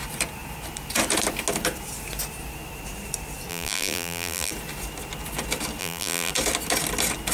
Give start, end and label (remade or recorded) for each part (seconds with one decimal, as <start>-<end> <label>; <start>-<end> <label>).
0.0-3.5 recorded; 3.5-4.5 remade; 4.5-5.8 recorded; 5.8-6.3 remade; 6.3-7.3 recorded